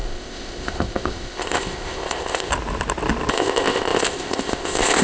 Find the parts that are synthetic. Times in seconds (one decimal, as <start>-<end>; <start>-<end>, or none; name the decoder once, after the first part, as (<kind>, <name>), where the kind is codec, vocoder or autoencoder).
0.0-2.5 (codec, ZipCodec); 3.3-5.0